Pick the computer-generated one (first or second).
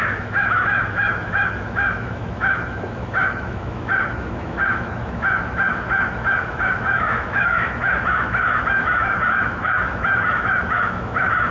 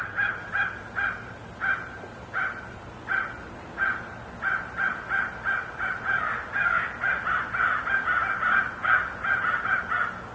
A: first